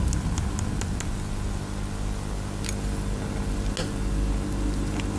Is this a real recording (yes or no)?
yes